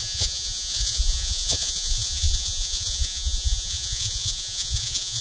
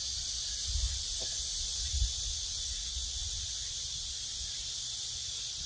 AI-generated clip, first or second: first